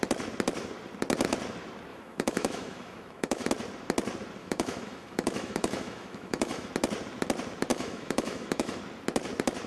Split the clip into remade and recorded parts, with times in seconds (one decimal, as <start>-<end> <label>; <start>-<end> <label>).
0.0-1.9 recorded; 1.9-3.5 remade; 3.5-4.4 recorded; 4.4-6.7 remade; 6.7-7.7 recorded; 7.7-8.8 remade; 8.8-9.7 recorded